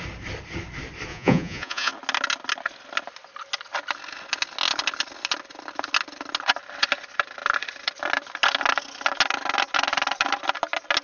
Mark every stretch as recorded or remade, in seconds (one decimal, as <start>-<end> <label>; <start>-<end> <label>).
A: 0.0-1.1 recorded; 1.1-1.9 remade; 1.9-11.0 recorded